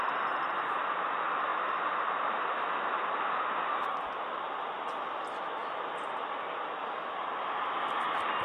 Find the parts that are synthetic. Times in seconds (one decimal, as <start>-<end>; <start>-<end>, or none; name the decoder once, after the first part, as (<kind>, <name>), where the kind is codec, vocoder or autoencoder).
none